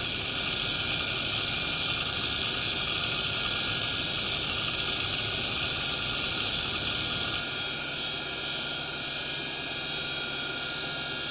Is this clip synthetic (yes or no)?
no